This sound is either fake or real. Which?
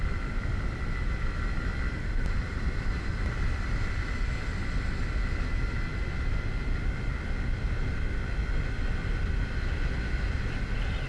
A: real